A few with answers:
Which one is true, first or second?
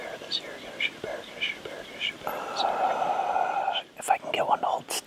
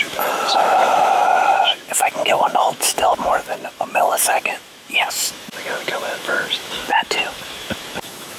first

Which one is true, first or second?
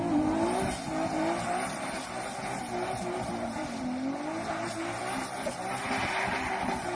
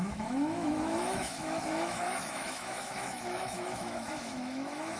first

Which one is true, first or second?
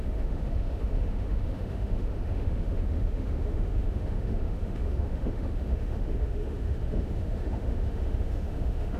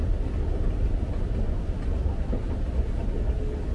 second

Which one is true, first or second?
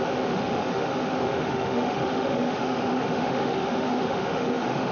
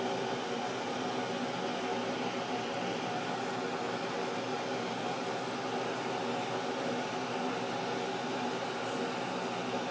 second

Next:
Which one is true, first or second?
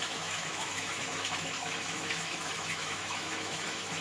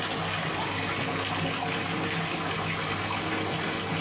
second